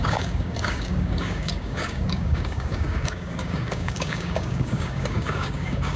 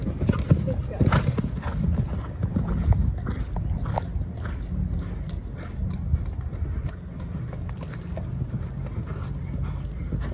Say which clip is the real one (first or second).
second